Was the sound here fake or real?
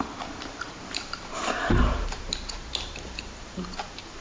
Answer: fake